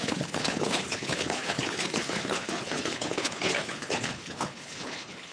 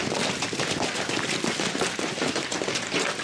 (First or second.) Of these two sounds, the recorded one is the second